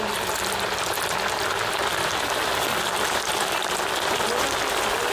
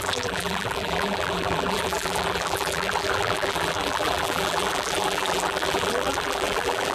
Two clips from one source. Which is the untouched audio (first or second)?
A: first